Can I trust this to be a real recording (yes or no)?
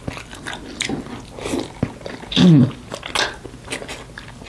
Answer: yes